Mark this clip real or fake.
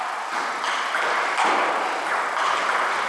real